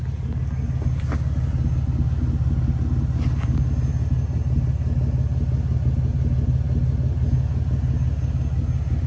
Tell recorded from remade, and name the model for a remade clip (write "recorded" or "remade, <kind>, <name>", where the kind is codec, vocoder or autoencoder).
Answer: recorded